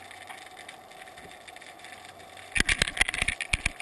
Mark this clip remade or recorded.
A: recorded